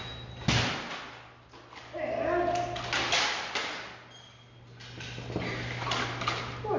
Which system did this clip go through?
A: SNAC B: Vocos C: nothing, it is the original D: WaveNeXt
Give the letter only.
C